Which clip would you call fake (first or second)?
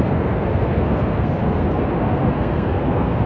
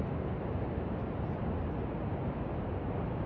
first